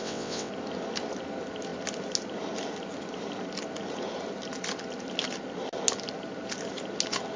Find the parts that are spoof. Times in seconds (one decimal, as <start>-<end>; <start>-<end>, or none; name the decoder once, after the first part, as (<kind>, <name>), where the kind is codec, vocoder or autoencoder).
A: 0.0-0.5 (vocoder, WaveNeXt)